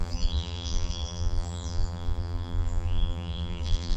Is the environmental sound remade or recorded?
remade